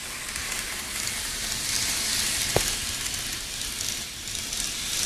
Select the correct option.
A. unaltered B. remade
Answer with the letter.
A